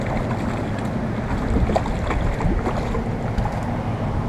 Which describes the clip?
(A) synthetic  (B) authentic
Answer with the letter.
B